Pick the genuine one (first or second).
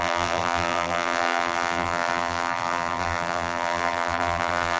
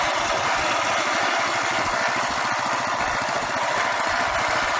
second